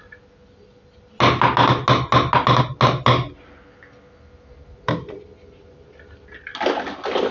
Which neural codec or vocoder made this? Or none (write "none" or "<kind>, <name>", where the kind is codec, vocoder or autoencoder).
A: none